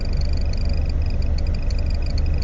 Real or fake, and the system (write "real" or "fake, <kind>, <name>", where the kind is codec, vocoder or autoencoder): real